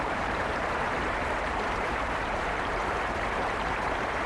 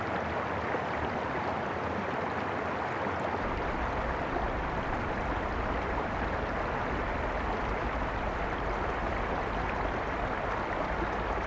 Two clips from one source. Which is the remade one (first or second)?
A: first